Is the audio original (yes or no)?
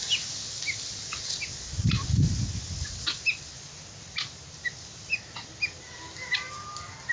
yes